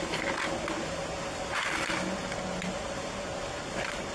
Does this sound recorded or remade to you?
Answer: recorded